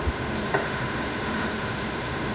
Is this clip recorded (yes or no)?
no